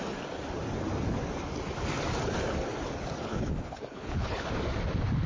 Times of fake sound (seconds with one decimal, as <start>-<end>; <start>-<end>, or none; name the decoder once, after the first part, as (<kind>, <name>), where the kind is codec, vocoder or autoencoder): 3.2-4.5 (codec, HILCodec)